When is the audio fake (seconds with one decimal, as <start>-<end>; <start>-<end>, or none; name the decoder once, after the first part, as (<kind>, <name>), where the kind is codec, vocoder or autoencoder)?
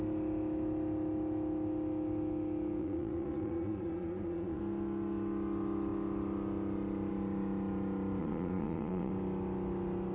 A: 2.8-4.6 (vocoder, Vocos); 8.2-9.1